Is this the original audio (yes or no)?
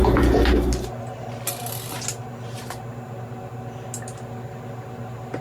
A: yes